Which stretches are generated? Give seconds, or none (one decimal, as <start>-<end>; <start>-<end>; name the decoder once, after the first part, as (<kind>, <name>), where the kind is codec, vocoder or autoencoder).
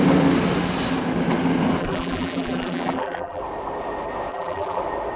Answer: 1.8-3.4 (vocoder, BigVGAN v2); 4.3-4.8